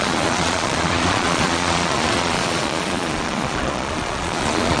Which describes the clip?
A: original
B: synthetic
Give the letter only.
B